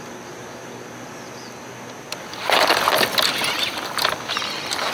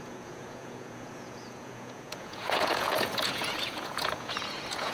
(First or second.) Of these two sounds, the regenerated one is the second